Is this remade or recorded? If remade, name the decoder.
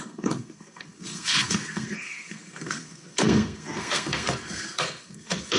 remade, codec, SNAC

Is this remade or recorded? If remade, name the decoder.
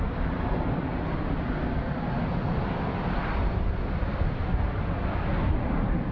recorded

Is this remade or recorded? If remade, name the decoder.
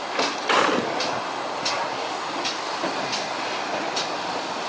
recorded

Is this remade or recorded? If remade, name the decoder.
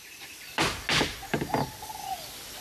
recorded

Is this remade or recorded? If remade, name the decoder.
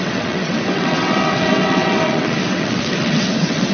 remade, vocoder, WaveNeXt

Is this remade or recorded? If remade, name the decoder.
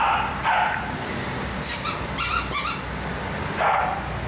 remade, vocoder, BigVGAN v2